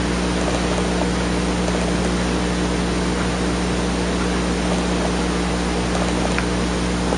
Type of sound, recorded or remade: recorded